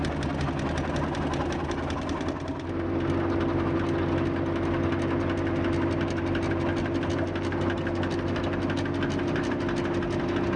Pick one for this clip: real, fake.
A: real